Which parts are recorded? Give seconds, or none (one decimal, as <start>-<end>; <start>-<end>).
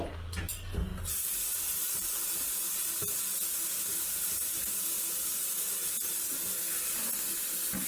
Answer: 0.0-7.9